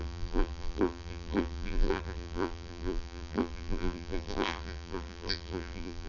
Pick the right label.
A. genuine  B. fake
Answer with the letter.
B